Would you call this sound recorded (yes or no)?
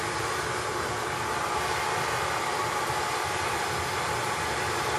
yes